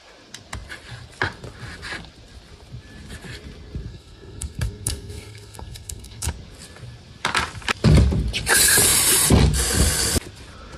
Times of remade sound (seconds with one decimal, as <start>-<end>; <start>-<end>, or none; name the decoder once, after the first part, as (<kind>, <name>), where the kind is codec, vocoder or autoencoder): 3.9-6.3 (codec, SNAC)

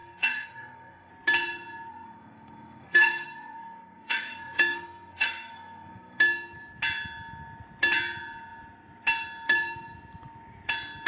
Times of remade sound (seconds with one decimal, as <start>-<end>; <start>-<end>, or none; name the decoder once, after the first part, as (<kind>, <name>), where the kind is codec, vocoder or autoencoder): 0.0-1.1 (codec, SNAC); 1.9-6.2